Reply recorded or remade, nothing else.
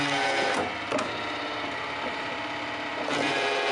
recorded